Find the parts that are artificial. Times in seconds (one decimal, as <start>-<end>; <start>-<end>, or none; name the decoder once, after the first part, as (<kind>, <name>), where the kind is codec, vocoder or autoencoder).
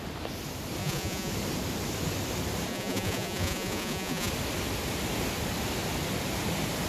0.8-1.3 (vocoder, Vocos); 2.7-4.3